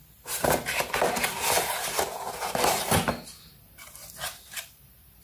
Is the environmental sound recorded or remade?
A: remade